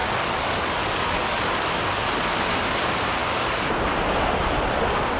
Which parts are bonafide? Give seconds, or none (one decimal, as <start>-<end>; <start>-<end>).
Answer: 1.7-3.2; 3.7-5.2